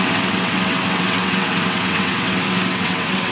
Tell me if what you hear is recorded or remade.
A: remade